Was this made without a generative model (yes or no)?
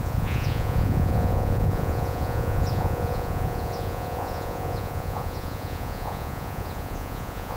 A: no